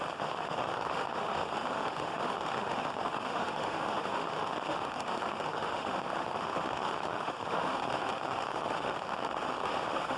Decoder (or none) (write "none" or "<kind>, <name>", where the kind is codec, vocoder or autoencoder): autoencoder, DAC-VAE